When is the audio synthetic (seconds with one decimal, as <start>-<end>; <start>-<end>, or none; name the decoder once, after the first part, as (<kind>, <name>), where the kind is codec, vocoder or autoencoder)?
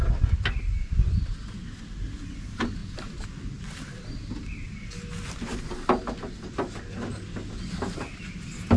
none